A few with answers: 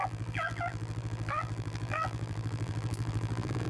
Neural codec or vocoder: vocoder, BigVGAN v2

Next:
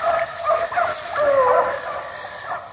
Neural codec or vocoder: none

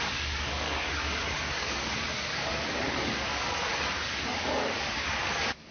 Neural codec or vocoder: codec, DAC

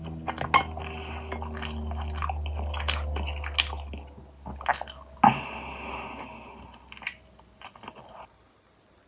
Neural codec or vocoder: none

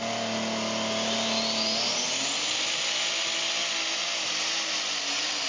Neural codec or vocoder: none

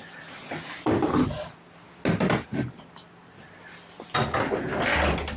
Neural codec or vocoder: none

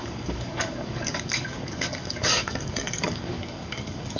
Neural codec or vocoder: codec, DAC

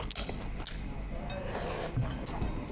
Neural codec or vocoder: none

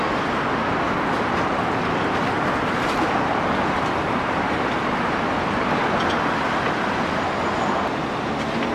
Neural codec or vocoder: none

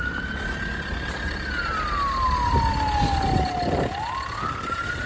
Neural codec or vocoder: none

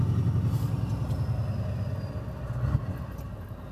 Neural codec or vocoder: none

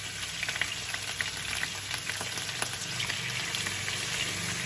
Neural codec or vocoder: none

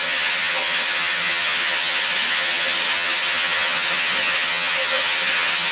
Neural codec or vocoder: vocoder, HiFi-GAN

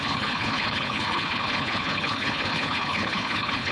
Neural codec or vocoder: codec, HILCodec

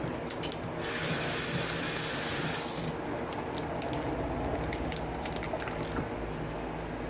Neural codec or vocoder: none